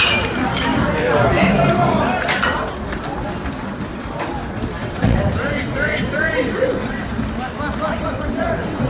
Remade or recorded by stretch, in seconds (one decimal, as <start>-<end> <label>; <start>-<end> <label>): 0.0-4.8 recorded; 4.8-7.1 remade; 7.1-7.9 recorded; 7.9-8.9 remade